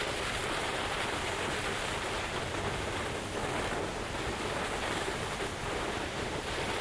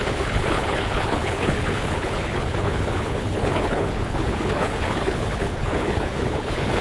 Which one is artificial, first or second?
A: second